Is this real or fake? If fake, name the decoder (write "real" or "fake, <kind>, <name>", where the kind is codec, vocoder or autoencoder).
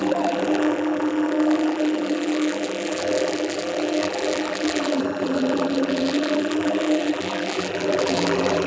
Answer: fake, vocoder, BigVGAN v2